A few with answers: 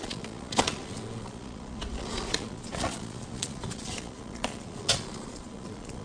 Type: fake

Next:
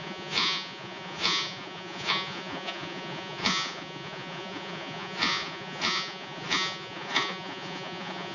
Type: fake